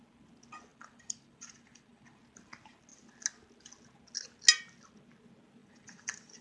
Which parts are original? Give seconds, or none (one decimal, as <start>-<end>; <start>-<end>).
0.0-0.7; 2.2-5.6